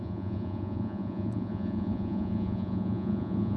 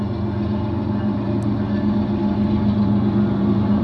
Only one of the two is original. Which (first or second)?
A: second